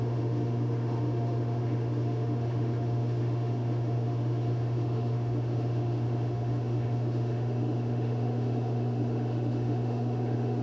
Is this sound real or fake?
fake